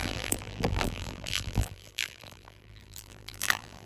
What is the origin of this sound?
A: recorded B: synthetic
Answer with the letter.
B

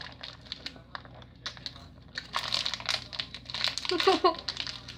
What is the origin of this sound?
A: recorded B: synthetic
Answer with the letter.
A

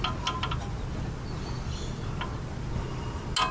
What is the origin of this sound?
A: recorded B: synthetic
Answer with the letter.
A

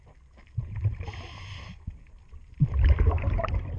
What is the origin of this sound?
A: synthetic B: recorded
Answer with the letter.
B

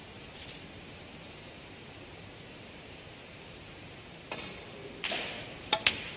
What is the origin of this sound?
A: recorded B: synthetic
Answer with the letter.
B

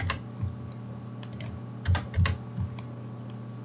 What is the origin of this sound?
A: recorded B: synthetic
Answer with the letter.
A